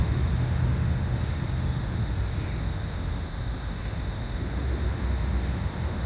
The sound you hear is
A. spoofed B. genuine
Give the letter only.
A